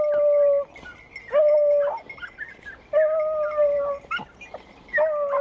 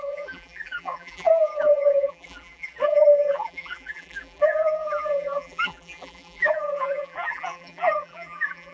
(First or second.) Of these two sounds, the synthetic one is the second